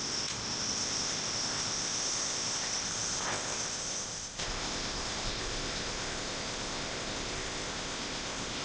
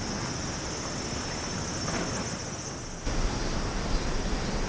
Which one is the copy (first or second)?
first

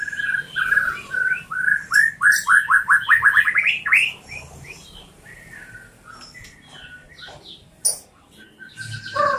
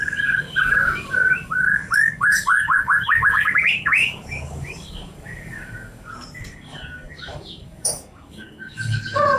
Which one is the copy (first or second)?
second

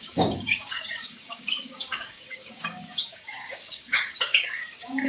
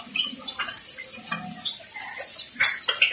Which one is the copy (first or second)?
first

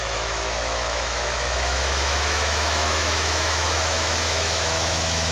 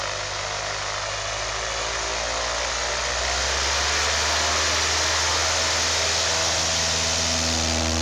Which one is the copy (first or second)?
first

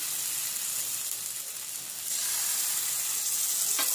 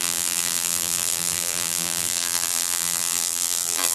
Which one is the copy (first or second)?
second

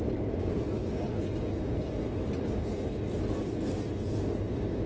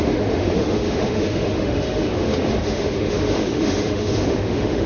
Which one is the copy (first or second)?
second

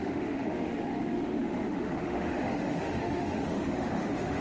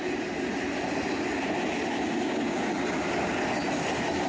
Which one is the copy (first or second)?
first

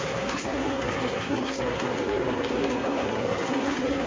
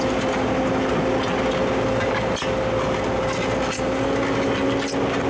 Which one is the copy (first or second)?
first